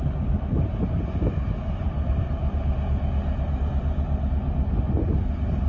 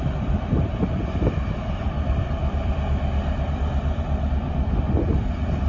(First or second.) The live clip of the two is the first